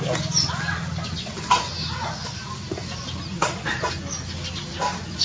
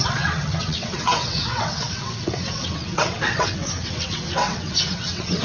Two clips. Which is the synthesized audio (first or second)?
second